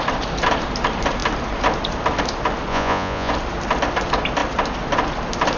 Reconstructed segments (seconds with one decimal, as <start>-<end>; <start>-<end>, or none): 2.7-3.3